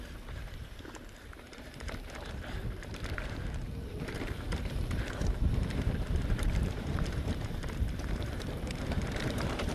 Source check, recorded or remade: remade